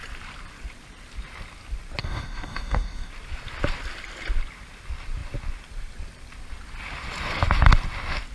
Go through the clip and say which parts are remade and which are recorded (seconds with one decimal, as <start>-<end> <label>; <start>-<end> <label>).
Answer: 0.0-2.0 recorded; 2.0-3.1 remade; 3.1-8.3 recorded